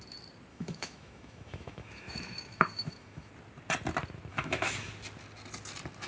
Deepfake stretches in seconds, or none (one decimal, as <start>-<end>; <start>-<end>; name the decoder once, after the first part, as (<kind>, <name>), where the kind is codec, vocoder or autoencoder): 0.5-3.3 (autoencoder, DAC-VAE); 4.3-4.9